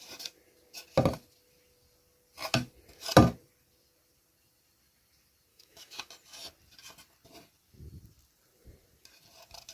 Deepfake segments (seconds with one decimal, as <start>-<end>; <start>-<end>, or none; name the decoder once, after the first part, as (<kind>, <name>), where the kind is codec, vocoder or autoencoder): 5.5-6.1 (autoencoder, DAC-VAE)